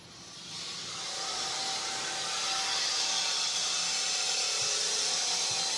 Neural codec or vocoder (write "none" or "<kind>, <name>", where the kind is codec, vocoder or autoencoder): none